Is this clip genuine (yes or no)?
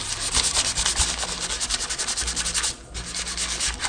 yes